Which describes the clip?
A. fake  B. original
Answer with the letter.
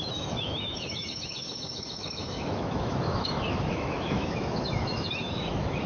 A